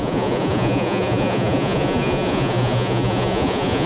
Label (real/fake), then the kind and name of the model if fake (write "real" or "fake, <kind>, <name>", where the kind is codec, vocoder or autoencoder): fake, vocoder, Vocos